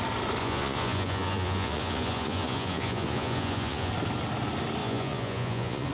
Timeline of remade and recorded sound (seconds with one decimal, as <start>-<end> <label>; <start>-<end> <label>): 0.0-0.4 recorded; 0.4-3.9 remade; 3.9-4.8 recorded; 4.8-5.9 remade